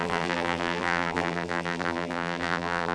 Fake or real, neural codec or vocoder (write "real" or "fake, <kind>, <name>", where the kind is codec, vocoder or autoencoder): fake, vocoder, BigVGAN v2